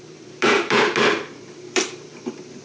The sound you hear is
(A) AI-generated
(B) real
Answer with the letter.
A